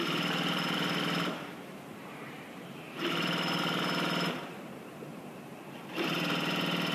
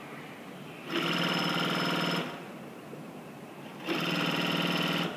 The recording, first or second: second